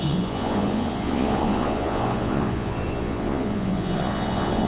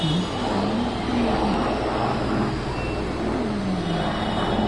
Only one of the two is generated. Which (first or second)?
first